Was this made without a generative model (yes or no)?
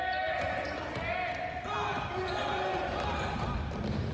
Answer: yes